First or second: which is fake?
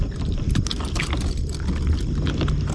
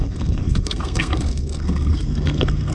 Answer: second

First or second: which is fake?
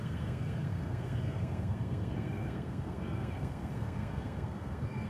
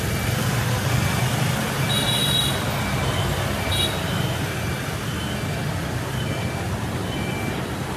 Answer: first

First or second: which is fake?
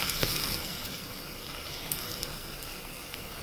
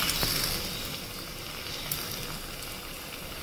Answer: first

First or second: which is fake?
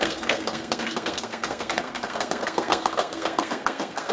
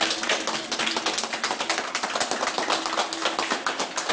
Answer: first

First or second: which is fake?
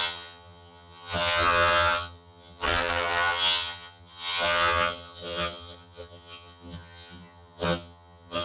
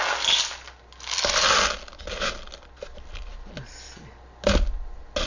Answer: first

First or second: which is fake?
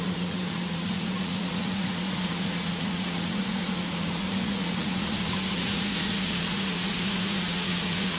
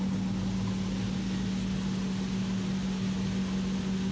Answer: first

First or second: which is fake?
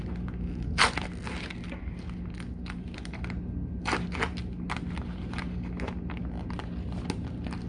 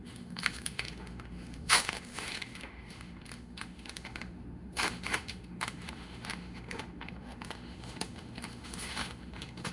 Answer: second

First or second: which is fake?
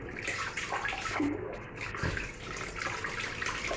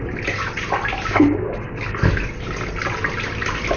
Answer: first